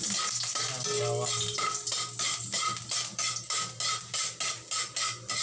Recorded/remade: recorded